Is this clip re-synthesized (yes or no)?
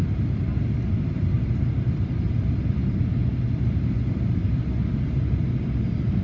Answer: no